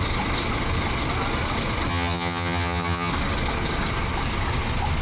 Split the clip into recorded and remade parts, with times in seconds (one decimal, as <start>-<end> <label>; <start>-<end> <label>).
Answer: 0.0-1.9 recorded; 1.9-3.1 remade; 3.1-5.0 recorded